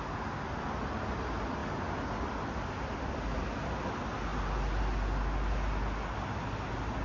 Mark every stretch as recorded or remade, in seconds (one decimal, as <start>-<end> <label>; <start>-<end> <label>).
0.0-7.0 recorded